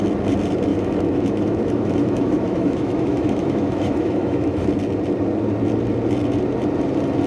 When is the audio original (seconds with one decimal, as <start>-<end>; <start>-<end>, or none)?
0.0-0.7; 4.7-7.3